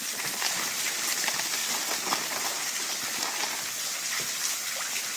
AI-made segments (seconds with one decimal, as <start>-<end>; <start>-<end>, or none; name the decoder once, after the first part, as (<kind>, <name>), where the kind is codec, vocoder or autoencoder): 0.0-1.6 (vocoder, BigVGAN v2); 3.5-5.2